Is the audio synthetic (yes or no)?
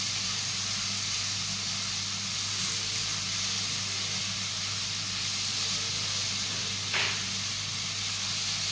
no